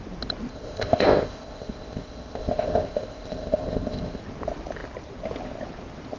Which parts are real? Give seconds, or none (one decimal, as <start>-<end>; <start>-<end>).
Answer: 0.0-0.5; 4.2-6.2